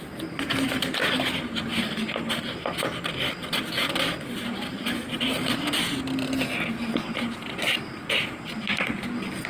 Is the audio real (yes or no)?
yes